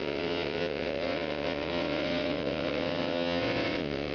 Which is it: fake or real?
fake